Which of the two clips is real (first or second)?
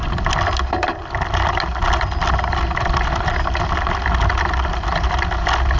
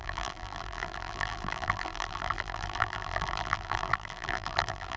first